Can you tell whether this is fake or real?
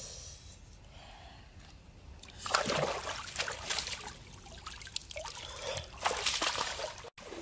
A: real